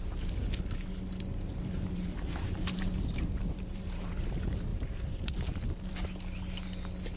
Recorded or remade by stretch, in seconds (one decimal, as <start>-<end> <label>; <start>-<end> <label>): 0.0-1.5 recorded; 1.5-4.1 remade; 4.1-4.7 recorded; 4.7-5.9 remade; 5.9-7.2 recorded